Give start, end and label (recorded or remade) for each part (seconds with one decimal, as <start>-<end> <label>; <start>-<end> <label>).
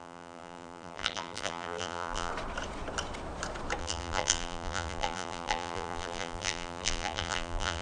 0.0-2.3 remade; 2.3-3.8 recorded; 3.8-7.8 remade